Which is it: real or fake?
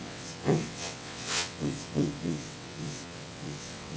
fake